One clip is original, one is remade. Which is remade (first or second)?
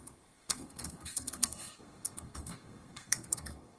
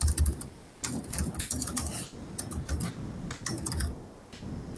first